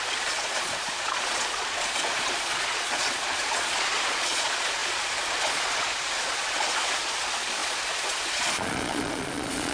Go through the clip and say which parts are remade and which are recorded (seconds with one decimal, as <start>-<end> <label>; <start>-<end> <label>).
0.0-9.7 remade